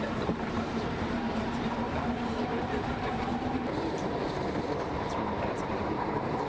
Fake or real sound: fake